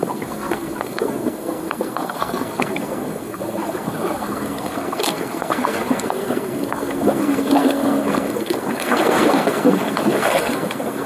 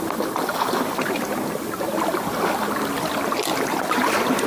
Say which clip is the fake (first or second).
first